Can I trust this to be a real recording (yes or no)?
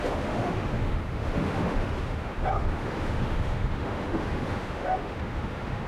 no